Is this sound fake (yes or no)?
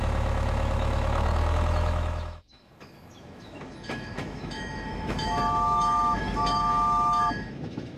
yes